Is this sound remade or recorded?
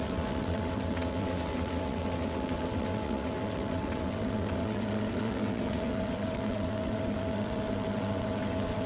remade